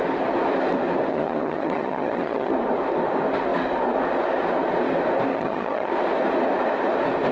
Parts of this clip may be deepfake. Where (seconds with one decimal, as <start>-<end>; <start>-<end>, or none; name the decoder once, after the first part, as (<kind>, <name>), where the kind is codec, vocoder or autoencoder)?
1.1-2.5 (vocoder, HiFi-GAN); 5.3-5.9

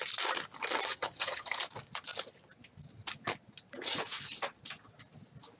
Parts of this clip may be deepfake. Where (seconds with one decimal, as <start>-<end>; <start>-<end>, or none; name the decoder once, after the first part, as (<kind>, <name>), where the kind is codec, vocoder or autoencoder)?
0.9-1.6 (vocoder, HiFi-GAN)

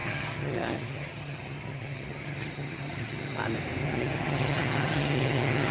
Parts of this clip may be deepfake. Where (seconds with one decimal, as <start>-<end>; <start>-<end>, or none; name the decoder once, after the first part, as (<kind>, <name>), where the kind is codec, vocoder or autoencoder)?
0.0-3.4 (vocoder, HiFi-GAN); 3.8-5.7

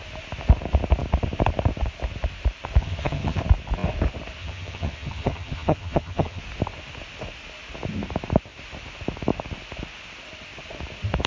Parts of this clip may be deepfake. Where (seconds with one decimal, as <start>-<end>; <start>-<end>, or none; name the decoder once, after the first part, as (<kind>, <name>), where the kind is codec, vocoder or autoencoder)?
2.8-3.4 (vocoder, HiFi-GAN); 4.4-6.4

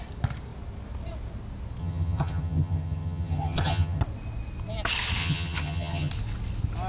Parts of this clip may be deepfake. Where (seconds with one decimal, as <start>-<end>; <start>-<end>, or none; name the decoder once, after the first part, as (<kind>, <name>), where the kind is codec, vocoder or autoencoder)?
1.8-4.0 (vocoder, HiFi-GAN); 5.2-6.1

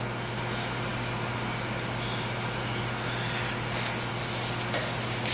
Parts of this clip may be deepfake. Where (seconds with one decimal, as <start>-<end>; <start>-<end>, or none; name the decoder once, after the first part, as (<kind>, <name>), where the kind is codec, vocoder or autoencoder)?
none

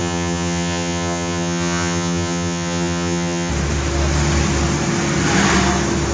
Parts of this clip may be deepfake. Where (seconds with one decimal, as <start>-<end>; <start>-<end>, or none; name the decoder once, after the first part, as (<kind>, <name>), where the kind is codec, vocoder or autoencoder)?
0.0-3.5 (vocoder, HiFi-GAN)